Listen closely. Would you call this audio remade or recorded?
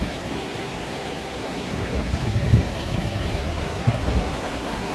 remade